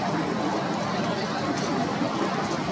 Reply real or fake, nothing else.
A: real